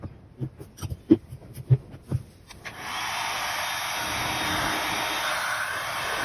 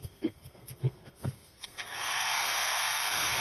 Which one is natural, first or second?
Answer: first